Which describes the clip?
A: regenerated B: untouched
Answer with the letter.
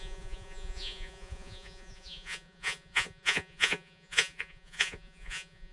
A